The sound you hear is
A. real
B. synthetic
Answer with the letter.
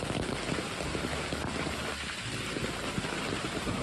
A